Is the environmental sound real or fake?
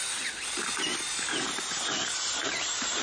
real